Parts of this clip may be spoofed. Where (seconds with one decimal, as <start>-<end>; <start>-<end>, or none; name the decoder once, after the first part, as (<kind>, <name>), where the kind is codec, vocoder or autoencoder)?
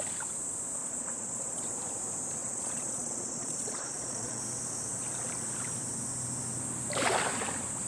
0.8-1.6 (vocoder, Vocos); 2.4-4.4